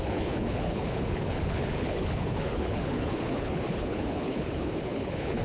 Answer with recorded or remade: remade